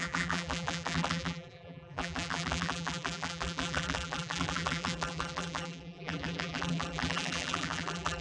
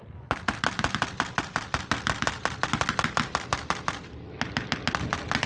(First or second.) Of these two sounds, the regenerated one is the first